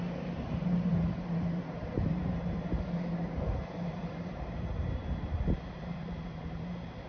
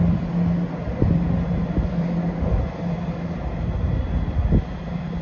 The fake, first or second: first